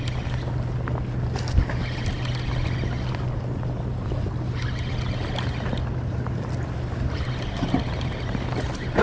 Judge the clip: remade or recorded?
recorded